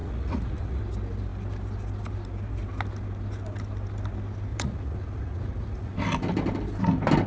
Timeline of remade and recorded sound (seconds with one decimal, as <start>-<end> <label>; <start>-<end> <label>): 0.0-0.8 remade; 0.8-4.5 recorded; 4.5-5.9 remade; 5.9-7.3 recorded